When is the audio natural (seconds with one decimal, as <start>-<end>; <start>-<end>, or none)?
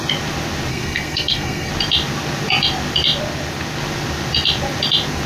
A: 0.0-0.7; 1.7-5.3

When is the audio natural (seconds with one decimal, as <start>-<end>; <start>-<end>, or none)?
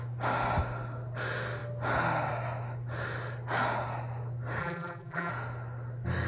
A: 0.0-4.6; 5.3-6.3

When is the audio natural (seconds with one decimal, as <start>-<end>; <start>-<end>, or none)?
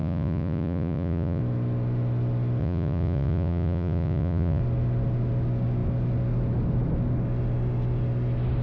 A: 1.4-2.6; 4.6-8.6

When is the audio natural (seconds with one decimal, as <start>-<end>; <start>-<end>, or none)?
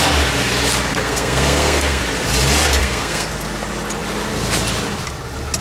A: 0.0-0.9; 2.0-2.8; 3.3-5.6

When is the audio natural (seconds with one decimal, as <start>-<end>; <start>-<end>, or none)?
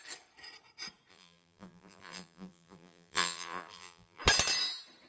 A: 0.0-1.1; 4.2-5.1